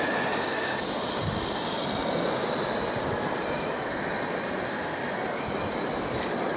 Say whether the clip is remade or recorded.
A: recorded